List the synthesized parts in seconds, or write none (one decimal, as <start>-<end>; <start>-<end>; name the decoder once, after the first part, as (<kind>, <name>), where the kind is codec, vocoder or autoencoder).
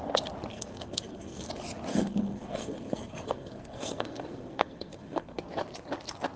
0.5-1.5 (codec, SNAC); 1.9-5.4